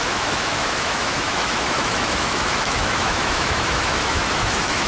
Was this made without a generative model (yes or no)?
no